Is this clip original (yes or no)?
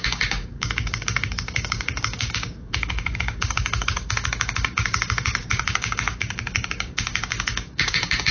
no